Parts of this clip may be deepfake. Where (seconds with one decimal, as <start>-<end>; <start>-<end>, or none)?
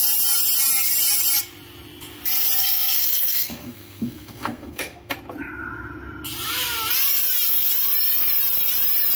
2.6-5.1